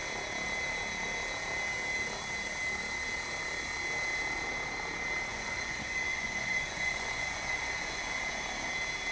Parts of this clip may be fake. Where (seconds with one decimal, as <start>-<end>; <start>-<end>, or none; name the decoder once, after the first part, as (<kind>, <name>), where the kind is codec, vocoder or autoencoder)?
5.3-8.7 (vocoder, Vocos)